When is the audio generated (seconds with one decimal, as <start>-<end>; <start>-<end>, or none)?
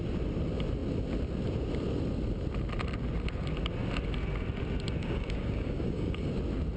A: 5.0-6.3